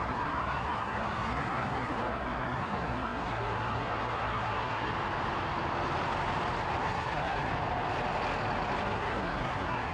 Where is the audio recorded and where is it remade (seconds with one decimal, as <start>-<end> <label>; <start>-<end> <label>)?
0.0-4.9 remade; 4.9-6.8 recorded; 6.8-7.5 remade; 7.5-8.8 recorded; 8.8-9.9 remade